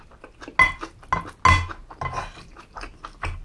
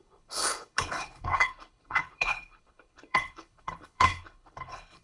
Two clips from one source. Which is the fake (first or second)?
second